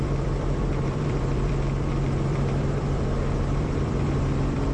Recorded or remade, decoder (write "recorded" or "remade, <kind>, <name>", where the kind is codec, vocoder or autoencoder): remade, vocoder, BigVGAN v2